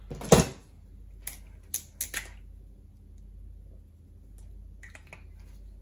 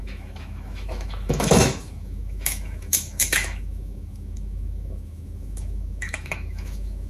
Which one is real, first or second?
first